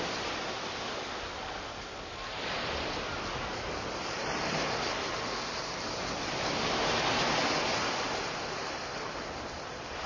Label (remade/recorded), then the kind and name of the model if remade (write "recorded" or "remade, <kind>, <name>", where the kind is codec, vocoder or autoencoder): recorded